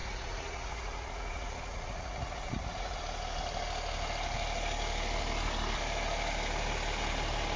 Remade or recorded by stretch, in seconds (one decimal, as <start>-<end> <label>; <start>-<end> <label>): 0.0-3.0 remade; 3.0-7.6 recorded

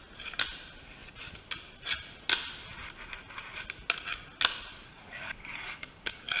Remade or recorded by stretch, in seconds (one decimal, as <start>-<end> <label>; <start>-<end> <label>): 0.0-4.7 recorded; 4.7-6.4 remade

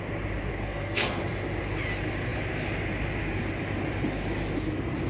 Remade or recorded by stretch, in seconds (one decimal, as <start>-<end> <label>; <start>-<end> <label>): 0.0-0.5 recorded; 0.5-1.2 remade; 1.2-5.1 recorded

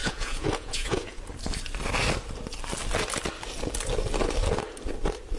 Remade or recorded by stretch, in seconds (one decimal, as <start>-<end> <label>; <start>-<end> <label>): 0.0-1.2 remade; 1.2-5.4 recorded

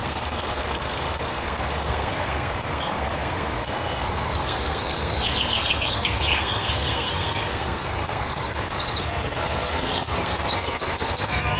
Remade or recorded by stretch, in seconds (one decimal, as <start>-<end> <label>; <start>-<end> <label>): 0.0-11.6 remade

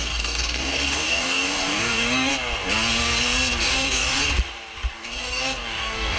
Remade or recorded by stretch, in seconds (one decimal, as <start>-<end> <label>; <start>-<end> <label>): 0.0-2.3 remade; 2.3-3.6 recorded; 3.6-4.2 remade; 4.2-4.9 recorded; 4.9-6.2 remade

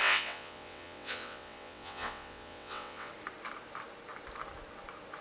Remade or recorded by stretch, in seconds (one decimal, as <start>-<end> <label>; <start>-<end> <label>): 0.0-3.1 remade; 3.1-5.2 recorded